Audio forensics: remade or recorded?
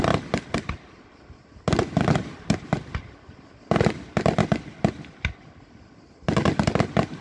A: recorded